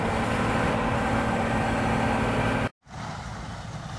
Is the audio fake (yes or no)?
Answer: no